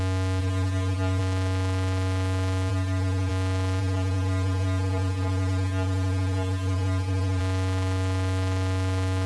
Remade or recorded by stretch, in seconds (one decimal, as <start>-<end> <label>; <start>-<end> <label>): 0.0-0.4 recorded; 0.4-1.2 remade; 1.2-2.7 recorded; 2.7-3.3 remade; 3.3-3.8 recorded; 3.8-7.4 remade; 7.4-9.3 recorded